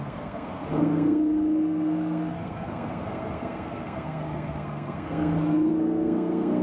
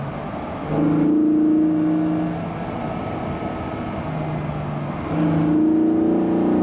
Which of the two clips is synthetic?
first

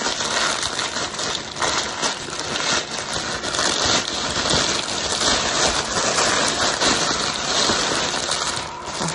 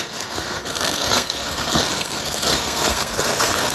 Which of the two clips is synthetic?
second